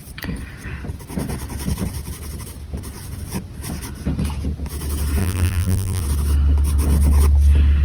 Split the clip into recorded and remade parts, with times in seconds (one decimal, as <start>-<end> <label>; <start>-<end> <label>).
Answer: 0.0-5.2 recorded; 5.2-6.0 remade; 6.0-7.8 recorded